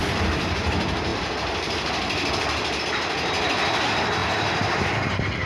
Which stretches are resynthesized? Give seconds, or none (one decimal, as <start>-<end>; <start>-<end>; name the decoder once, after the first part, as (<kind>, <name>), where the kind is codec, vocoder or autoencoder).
none